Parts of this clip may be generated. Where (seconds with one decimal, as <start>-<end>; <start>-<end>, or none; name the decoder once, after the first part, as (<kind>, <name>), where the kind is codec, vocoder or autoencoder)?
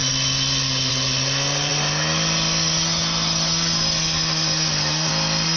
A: none